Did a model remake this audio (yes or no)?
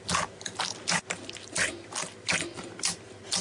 no